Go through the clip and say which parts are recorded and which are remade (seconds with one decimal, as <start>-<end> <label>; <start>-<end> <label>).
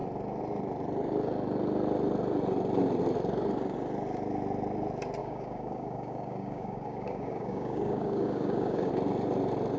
0.0-5.2 recorded; 5.2-8.9 remade; 8.9-9.8 recorded